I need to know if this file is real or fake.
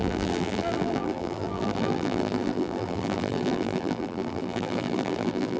fake